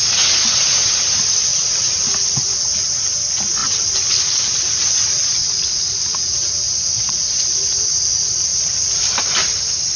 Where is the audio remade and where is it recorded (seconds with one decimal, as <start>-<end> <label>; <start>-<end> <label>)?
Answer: 0.0-1.5 recorded; 1.5-2.5 remade; 2.5-3.6 recorded; 3.6-4.1 remade; 4.1-5.3 recorded; 5.3-7.9 remade; 7.9-8.5 recorded; 8.5-10.0 remade